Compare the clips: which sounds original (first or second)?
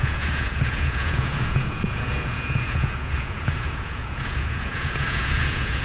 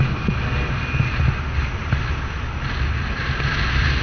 second